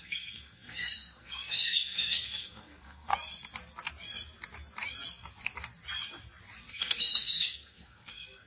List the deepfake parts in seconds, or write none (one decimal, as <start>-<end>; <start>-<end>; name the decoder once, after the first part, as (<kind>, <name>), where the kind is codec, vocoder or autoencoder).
0.0-3.1 (codec, SNAC); 6.7-8.5